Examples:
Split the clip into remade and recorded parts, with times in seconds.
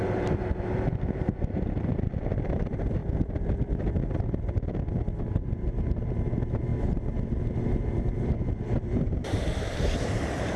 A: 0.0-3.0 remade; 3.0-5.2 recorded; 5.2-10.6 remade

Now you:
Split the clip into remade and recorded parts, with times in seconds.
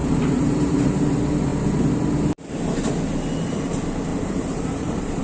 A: 0.0-0.9 remade; 0.9-4.1 recorded; 4.1-5.2 remade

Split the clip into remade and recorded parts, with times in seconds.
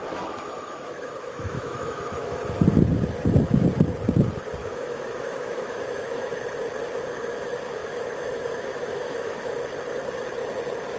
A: 0.0-2.4 remade; 2.4-4.6 recorded; 4.6-6.3 remade; 6.3-7.8 recorded; 7.8-9.5 remade; 9.5-11.0 recorded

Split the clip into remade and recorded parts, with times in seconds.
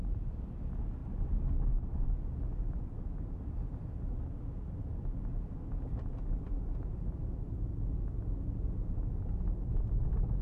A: 0.0-10.4 recorded